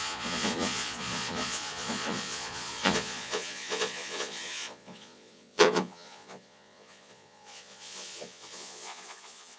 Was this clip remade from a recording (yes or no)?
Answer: yes